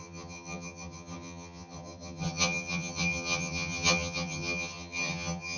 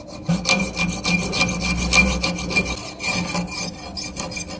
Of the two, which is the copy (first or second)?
first